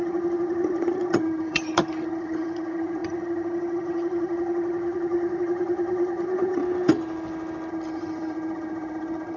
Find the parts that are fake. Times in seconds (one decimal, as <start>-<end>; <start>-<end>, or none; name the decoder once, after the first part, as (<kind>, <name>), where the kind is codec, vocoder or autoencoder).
0.0-6.6 (vocoder, HiFi-GAN); 7.7-9.4